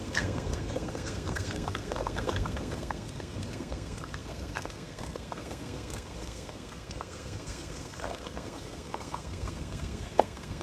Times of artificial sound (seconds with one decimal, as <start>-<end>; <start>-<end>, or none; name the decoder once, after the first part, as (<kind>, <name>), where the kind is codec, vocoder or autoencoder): 0.0-10.6 (codec, SNAC)